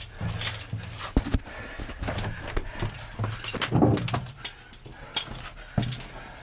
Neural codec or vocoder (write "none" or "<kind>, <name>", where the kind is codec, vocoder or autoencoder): none